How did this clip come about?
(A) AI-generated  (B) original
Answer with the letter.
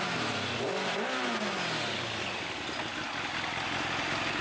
B